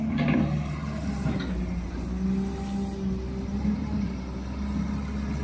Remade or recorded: recorded